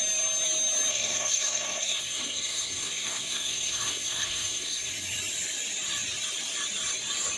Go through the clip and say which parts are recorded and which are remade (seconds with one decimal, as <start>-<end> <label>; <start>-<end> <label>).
0.0-0.9 recorded; 0.9-4.9 remade; 4.9-7.4 recorded